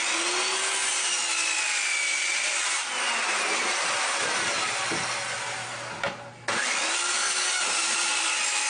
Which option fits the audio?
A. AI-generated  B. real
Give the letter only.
B